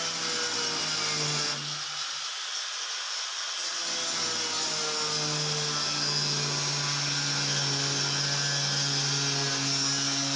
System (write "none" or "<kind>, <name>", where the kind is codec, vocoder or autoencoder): none